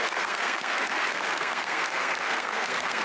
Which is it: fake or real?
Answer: fake